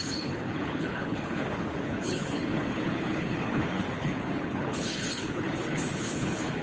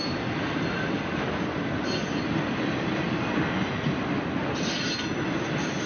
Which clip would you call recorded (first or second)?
second